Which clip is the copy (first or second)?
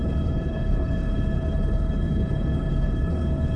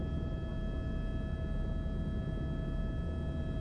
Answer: first